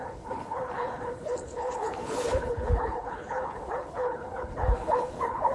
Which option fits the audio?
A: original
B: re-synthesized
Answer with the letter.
B